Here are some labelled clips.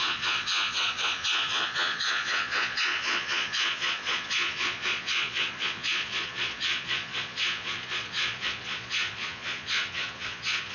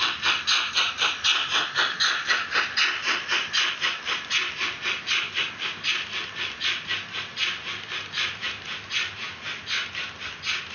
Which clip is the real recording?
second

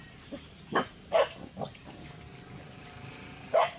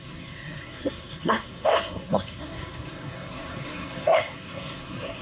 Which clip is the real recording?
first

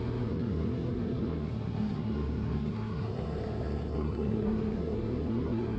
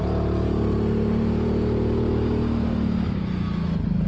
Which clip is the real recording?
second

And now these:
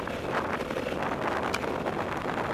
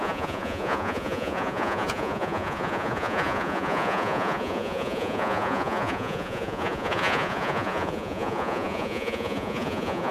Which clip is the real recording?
first